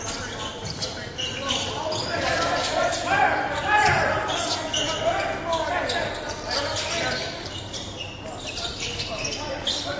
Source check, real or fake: real